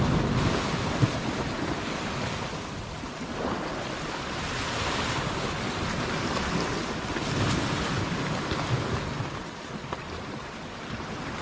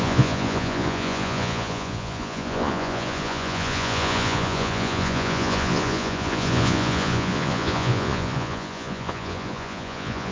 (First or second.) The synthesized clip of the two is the second